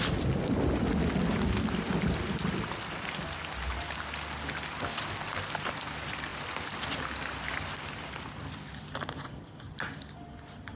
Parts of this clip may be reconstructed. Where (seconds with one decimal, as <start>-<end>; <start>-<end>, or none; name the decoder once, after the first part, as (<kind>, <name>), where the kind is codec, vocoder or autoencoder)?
none